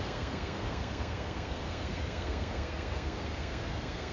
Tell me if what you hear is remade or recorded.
remade